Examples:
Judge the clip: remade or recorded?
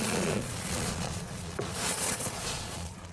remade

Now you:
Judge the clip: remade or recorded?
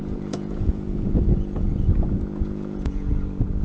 remade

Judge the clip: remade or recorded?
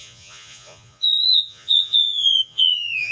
remade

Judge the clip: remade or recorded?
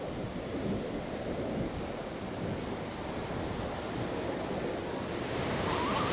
recorded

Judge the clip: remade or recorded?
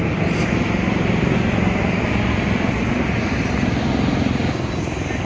recorded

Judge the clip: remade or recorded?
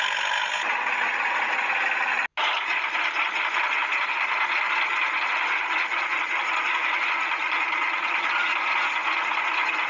recorded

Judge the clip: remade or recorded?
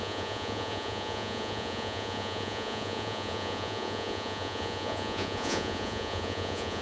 remade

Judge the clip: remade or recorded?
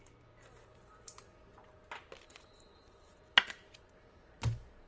recorded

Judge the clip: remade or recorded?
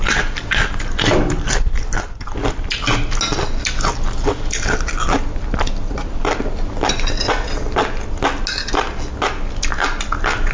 recorded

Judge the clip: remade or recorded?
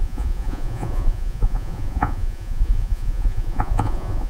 remade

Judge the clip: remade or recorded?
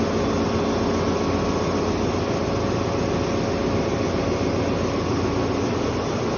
recorded